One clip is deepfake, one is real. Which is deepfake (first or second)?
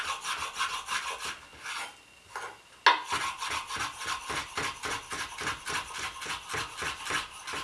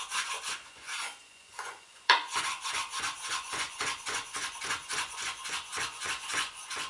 second